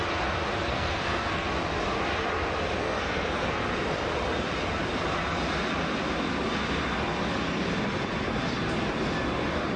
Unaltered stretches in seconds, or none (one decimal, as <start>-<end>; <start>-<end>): 0.0-0.6; 1.5-2.8; 3.5-9.8